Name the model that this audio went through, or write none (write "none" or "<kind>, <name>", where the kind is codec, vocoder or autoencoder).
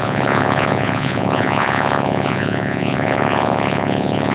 vocoder, Vocos